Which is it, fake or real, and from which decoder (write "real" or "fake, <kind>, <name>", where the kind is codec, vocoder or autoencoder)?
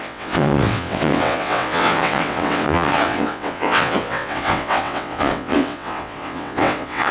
fake, vocoder, WaveNeXt